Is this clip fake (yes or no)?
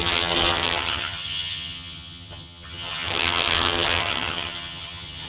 yes